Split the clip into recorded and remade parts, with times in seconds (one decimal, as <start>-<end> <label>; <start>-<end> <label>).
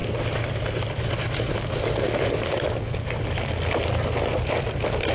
0.0-5.1 recorded